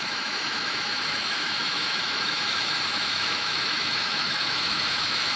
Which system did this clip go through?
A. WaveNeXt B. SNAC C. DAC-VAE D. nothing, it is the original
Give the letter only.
C